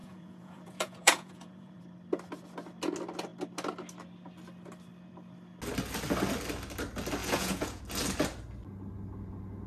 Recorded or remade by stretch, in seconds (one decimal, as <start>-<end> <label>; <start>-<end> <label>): 0.0-1.8 remade; 1.8-7.2 recorded; 7.2-7.8 remade; 7.8-9.7 recorded